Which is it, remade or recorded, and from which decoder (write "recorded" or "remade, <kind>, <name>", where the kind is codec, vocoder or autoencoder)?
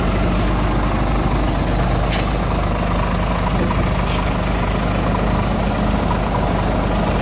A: recorded